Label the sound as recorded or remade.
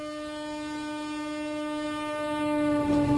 recorded